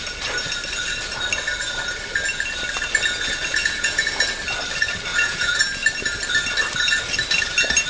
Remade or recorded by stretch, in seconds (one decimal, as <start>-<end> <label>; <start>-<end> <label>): 0.0-3.5 recorded; 3.5-4.1 remade; 4.1-5.1 recorded; 5.1-5.6 remade; 5.6-7.9 recorded